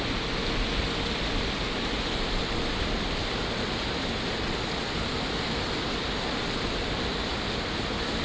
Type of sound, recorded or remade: recorded